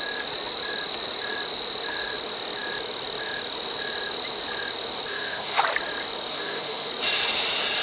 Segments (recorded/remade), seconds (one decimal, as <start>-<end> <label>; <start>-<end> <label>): 0.0-5.1 recorded; 5.1-5.6 remade; 5.6-6.3 recorded; 6.3-6.9 remade; 6.9-7.8 recorded